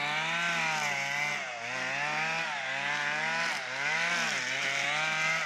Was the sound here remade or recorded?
recorded